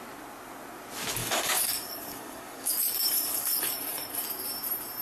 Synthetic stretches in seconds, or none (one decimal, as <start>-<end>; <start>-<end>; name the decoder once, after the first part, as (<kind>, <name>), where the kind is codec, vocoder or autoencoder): 1.2-4.2 (codec, DAC)